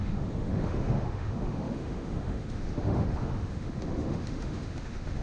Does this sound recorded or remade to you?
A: remade